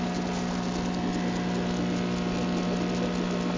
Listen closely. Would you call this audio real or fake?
real